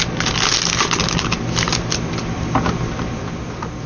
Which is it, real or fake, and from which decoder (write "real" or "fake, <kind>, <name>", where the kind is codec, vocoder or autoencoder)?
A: real